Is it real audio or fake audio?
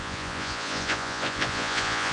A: fake